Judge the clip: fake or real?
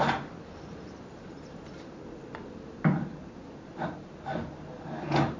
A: real